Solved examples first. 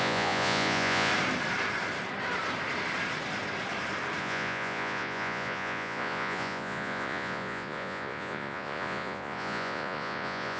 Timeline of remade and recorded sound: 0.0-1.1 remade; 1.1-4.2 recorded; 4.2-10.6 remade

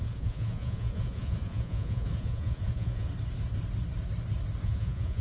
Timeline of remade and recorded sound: 0.0-3.1 remade; 3.1-4.6 recorded; 4.6-5.2 remade